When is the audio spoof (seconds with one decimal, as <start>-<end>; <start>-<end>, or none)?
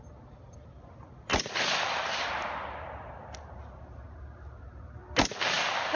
1.3-2.1